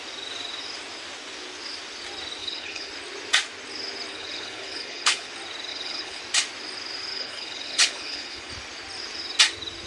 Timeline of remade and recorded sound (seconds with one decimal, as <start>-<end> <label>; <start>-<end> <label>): 0.0-2.4 recorded; 2.4-2.9 remade; 2.9-4.1 recorded; 4.1-5.3 remade; 5.3-5.7 recorded; 5.7-6.2 remade; 6.2-7.1 recorded; 7.1-8.5 remade; 8.5-9.9 recorded